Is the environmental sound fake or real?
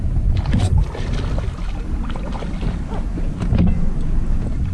real